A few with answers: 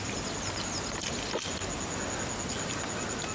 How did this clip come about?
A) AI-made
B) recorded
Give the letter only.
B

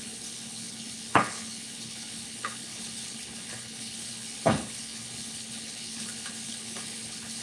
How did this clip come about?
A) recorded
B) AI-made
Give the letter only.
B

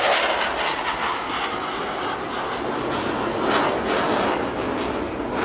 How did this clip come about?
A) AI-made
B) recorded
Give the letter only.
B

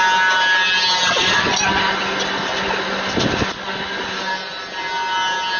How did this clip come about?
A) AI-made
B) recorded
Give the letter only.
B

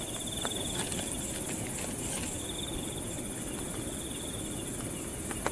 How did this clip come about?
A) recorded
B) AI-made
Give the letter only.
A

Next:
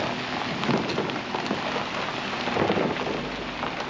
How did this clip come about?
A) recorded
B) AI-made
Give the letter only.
A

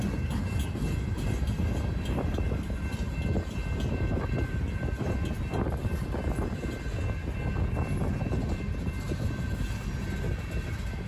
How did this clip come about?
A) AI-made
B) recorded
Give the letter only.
B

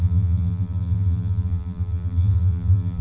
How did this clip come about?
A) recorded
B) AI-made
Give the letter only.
B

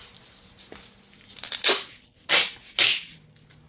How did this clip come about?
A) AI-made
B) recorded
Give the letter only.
B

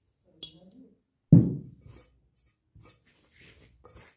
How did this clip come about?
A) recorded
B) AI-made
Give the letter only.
A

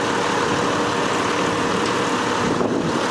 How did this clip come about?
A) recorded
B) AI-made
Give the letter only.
A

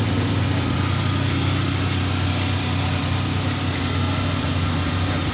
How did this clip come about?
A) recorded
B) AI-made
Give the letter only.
A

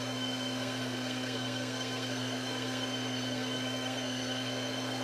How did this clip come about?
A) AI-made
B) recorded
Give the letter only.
A